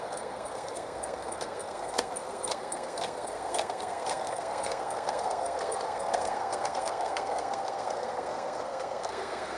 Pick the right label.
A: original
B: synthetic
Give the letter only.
B